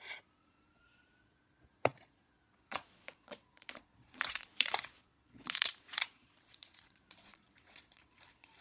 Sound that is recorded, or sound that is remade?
remade